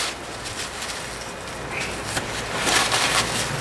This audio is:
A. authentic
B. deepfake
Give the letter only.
A